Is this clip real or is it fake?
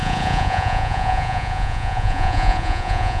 fake